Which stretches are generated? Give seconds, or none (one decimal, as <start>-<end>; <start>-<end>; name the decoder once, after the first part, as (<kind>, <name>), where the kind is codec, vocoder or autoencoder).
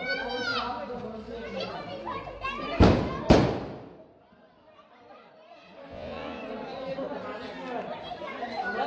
5.9-6.4 (vocoder, Vocos)